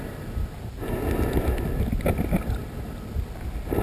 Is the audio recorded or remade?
recorded